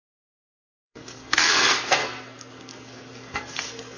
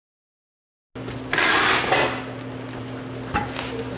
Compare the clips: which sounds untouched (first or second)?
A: second